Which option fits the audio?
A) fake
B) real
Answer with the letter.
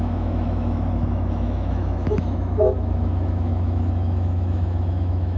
A